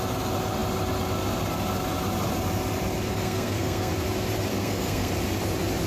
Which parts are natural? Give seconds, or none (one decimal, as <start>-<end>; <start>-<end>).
0.0-3.1; 3.9-4.5; 5.1-5.9